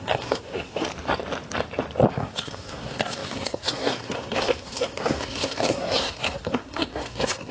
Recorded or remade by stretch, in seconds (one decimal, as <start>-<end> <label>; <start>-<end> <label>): 0.0-0.9 remade; 0.9-2.1 recorded; 2.1-7.5 remade